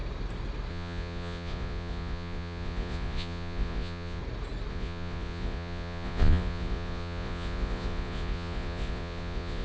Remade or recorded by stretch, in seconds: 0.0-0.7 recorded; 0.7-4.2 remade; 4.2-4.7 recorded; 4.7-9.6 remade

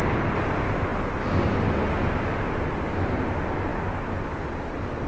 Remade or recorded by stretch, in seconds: 0.0-5.1 recorded

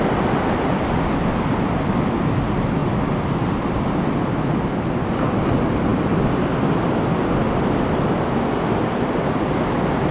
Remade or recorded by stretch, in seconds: 0.0-10.1 recorded